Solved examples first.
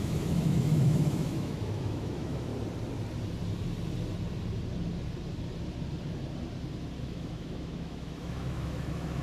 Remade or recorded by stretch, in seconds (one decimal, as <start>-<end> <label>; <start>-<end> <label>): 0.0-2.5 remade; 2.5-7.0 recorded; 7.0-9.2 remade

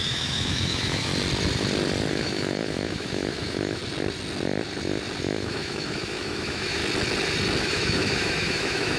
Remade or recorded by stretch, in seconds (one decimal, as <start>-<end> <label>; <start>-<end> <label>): 0.0-1.1 remade; 1.1-2.1 recorded; 2.1-3.8 remade; 3.8-5.2 recorded; 5.2-6.8 remade; 6.8-7.6 recorded; 7.6-9.0 remade

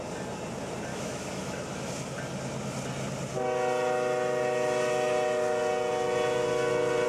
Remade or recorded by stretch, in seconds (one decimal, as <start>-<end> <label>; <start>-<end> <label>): 0.0-0.9 recorded; 0.9-1.9 remade; 1.9-7.1 recorded